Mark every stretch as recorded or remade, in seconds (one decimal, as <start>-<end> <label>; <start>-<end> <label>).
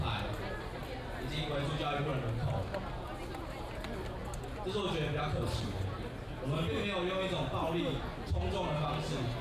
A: 0.0-9.4 recorded